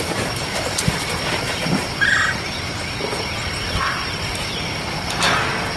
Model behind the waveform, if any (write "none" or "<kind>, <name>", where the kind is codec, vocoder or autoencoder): none